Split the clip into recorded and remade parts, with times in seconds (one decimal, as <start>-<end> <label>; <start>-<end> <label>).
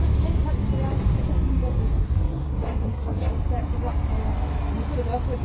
0.0-2.0 recorded; 2.0-3.3 remade; 3.3-5.4 recorded